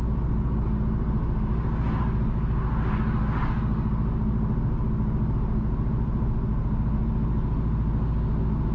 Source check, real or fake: real